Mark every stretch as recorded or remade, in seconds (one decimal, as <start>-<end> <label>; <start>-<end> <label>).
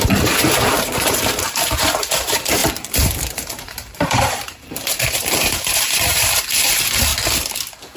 0.0-7.1 remade; 7.1-8.0 recorded